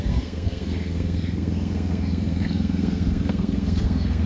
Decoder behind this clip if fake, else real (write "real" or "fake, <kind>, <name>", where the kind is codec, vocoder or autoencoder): fake, codec, SNAC